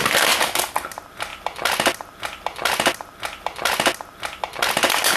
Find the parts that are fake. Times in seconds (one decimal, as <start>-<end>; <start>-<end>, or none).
none